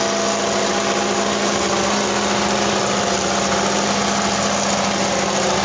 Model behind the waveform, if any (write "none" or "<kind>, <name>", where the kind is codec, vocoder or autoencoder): none